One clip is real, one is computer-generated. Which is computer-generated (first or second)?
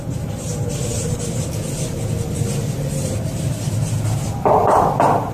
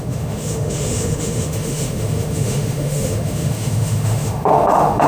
second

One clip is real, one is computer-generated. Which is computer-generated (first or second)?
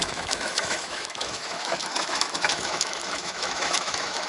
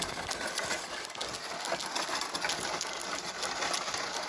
first